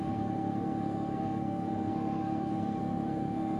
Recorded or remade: remade